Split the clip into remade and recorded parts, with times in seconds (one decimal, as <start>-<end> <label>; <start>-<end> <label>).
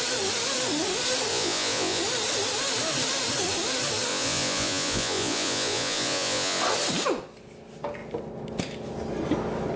0.0-1.3 recorded; 1.3-2.0 remade; 2.0-4.1 recorded; 4.1-6.6 remade; 6.6-9.8 recorded